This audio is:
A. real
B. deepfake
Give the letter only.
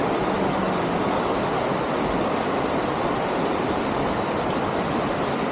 A